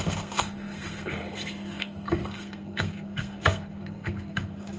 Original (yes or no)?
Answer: no